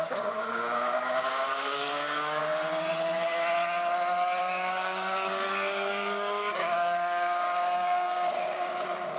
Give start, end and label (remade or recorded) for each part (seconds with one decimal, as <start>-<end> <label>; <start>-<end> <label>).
0.0-2.4 remade; 2.4-4.4 recorded; 4.4-9.2 remade